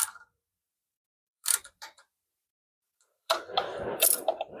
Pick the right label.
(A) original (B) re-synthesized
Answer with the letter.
B